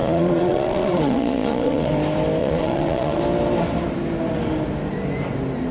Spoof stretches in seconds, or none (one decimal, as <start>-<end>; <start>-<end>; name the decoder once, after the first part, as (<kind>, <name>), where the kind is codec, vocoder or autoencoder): 0.0-1.9 (vocoder, Vocos); 2.4-3.2